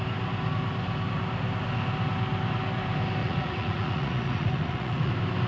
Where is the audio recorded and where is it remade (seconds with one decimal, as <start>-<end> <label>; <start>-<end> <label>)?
0.0-3.2 recorded; 3.2-5.1 remade; 5.1-5.5 recorded